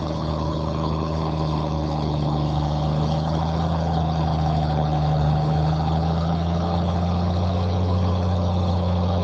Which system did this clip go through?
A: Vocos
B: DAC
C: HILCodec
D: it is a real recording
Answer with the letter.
C